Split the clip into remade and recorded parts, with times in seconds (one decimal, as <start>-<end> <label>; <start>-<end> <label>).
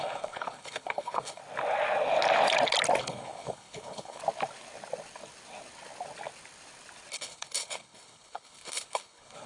0.0-1.4 remade; 1.4-3.0 recorded; 3.0-4.2 remade; 4.2-7.1 recorded; 7.1-9.5 remade